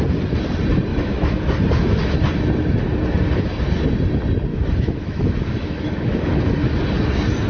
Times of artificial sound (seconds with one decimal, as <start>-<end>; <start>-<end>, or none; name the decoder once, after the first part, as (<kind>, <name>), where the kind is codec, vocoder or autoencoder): 0.9-1.6 (autoencoder, DAC-VAE); 4.5-6.3